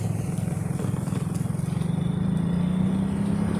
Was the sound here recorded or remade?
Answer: recorded